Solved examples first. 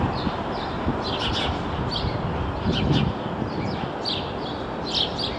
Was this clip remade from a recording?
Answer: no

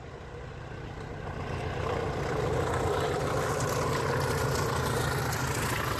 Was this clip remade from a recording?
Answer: no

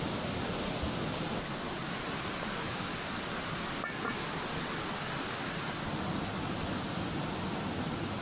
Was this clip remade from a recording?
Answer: no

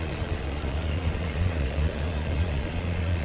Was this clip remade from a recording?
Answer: yes